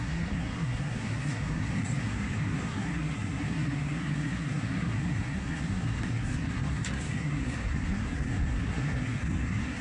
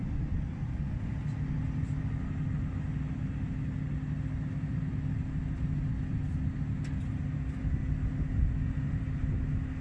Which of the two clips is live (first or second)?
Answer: second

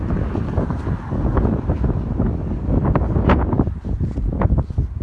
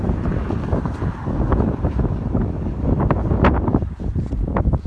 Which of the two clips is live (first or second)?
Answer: first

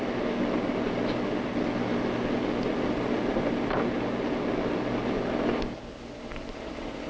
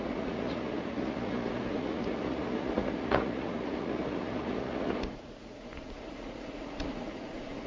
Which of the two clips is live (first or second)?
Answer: first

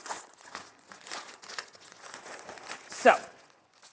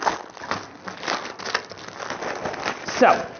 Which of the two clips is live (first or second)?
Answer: second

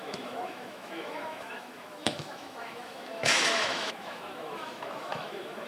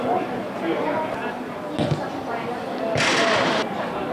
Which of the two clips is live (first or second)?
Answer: second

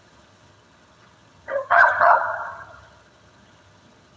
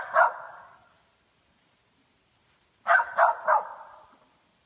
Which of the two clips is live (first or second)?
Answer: second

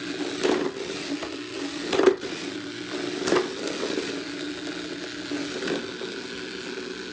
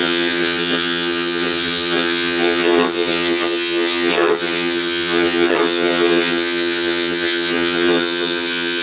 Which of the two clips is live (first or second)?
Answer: first